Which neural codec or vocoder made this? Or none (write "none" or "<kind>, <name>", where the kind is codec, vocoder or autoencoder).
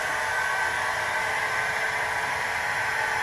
none